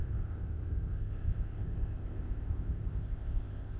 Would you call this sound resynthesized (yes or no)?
yes